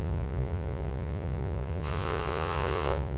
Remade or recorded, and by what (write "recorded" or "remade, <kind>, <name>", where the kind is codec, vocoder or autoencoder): remade, vocoder, Vocos